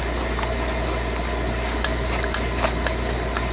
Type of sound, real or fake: real